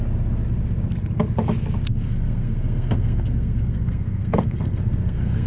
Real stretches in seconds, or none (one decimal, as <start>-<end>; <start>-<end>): 0.0-1.9